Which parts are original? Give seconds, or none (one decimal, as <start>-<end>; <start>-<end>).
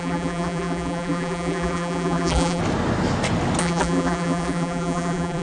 2.6-3.6